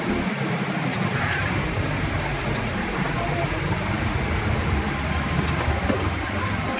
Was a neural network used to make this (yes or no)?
yes